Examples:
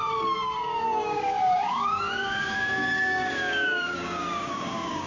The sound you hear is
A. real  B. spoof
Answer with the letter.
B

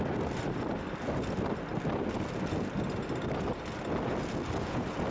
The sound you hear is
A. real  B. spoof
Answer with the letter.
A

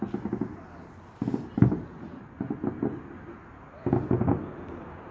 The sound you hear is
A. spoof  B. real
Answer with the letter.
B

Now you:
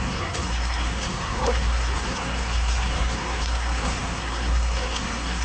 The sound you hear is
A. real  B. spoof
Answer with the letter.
B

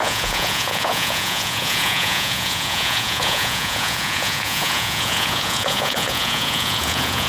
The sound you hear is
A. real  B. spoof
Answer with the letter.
B